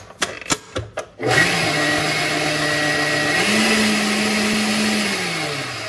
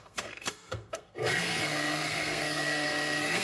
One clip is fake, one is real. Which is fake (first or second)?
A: second